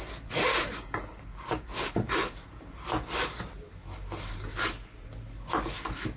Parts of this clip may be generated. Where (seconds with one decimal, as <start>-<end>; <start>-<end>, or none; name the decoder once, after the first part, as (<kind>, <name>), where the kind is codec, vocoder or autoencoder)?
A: 0.5-1.9 (codec, DAC)